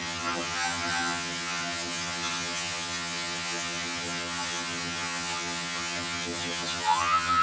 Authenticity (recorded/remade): remade